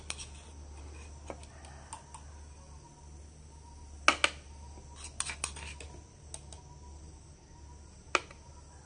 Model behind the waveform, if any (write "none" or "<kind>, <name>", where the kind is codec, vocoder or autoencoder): none